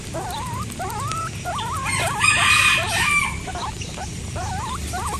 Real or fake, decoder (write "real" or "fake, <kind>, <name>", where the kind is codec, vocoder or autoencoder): fake, vocoder, BigVGAN v2